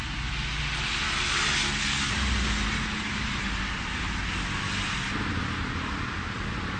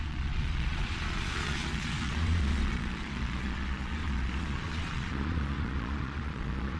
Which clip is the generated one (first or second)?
second